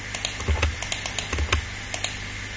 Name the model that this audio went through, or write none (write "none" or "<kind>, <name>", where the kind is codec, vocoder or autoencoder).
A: none